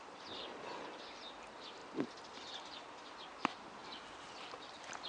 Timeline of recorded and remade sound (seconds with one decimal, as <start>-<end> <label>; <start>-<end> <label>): 0.0-5.1 recorded